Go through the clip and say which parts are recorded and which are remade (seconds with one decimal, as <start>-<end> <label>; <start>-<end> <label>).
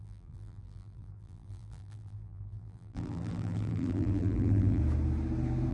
0.0-4.8 remade; 4.8-5.7 recorded